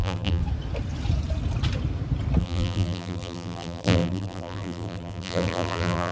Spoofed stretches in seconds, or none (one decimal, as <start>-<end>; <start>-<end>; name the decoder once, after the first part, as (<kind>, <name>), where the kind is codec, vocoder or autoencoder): 0.0-0.4 (vocoder, BigVGAN v2); 2.4-6.1